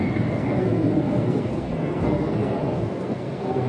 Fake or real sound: fake